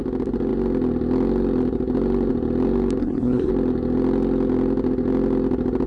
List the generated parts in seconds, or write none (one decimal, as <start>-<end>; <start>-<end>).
3.0-3.5